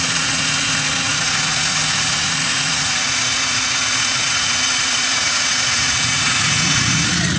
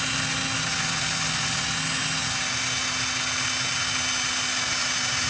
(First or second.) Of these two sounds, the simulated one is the first